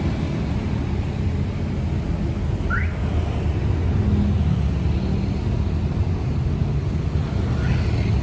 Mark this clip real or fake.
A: real